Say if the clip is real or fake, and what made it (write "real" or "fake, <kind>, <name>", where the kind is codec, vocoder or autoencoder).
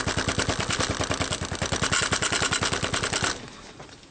real